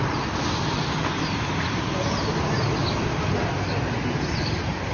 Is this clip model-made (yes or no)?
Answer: no